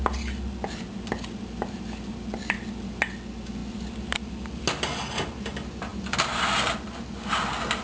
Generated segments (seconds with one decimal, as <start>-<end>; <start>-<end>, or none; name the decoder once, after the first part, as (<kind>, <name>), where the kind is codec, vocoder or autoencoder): none